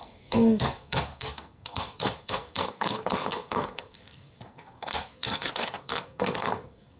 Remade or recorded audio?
remade